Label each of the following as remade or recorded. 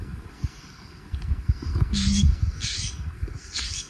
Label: remade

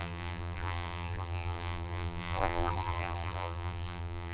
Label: remade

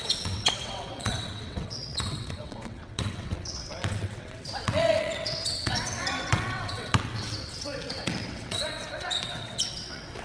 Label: remade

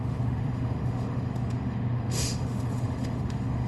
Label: remade